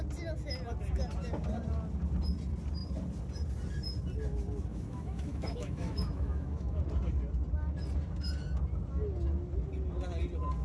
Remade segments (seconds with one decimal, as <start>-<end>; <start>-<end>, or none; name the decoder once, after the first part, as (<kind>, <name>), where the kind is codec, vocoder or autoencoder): 4.7-6.8 (autoencoder, DAC-VAE)